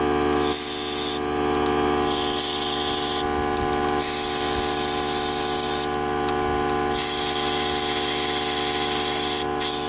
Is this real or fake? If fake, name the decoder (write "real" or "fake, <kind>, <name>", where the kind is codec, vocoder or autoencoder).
real